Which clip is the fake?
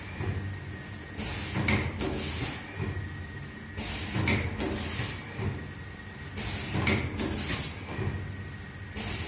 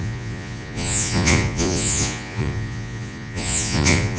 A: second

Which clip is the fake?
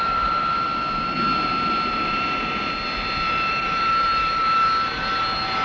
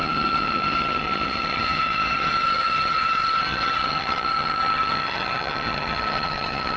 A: second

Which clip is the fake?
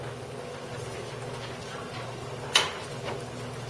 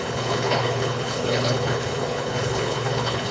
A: second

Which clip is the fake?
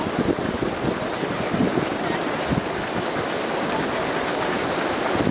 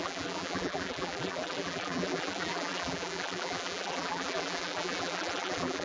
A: second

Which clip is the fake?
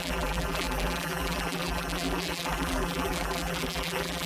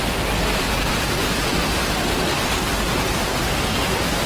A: first